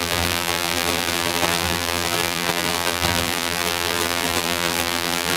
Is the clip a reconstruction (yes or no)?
yes